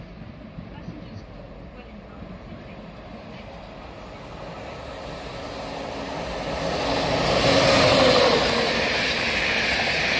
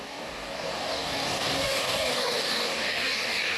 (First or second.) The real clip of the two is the first